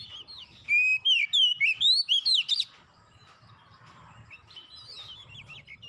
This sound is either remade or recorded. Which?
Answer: recorded